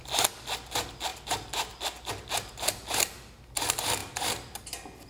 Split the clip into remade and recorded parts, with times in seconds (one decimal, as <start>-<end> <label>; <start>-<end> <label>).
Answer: 0.0-1.1 recorded; 1.1-2.1 remade; 2.1-5.1 recorded